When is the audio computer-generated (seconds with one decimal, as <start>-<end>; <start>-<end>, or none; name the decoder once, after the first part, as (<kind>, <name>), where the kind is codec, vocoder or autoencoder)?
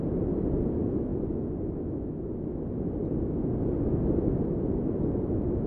none